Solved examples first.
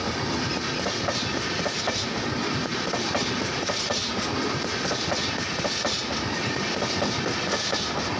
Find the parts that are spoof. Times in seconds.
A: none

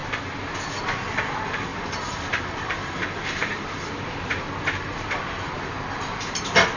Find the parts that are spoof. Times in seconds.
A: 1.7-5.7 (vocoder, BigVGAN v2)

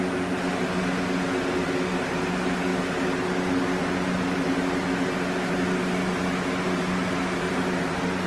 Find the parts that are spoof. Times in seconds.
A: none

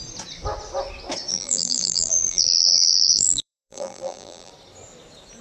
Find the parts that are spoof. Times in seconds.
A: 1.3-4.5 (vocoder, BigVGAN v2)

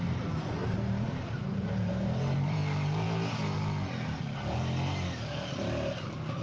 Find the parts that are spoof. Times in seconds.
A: 0.0-2.6 (vocoder, BigVGAN v2)

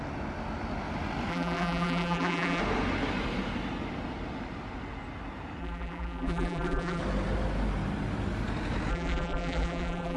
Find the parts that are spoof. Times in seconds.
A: 1.3-2.6 (vocoder, BigVGAN v2); 5.6-7.0; 8.9-10.2

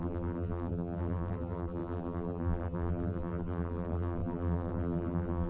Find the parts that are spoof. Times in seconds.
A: 0.0-5.5 (vocoder, BigVGAN v2)